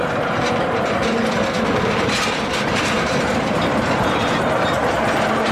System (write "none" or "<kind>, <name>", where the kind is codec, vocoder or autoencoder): vocoder, BigVGAN v2